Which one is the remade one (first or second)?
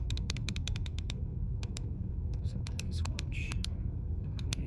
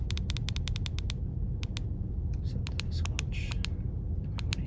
first